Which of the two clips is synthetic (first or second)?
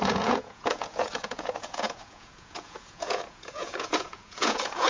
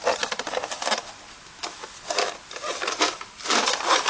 first